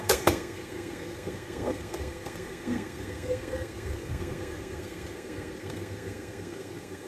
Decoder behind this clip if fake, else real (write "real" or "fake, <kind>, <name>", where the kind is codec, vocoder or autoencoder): fake, codec, SNAC